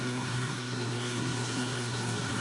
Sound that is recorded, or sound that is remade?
remade